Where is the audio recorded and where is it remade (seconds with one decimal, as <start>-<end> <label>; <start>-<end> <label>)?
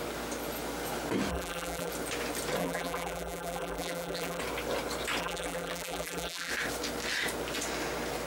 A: 0.0-1.3 recorded; 1.3-1.9 remade; 1.9-2.6 recorded; 2.6-4.4 remade; 4.4-5.2 recorded; 5.2-6.5 remade; 6.5-8.3 recorded